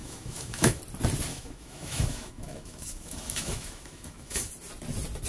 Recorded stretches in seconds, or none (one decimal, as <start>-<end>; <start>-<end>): 0.8-1.3; 4.5-5.3